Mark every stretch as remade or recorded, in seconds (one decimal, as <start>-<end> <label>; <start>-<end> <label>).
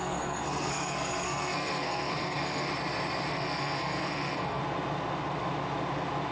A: 0.0-2.7 remade; 2.7-3.3 recorded; 3.3-4.6 remade; 4.6-6.3 recorded